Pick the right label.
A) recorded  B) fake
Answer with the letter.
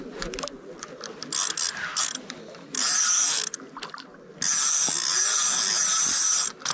A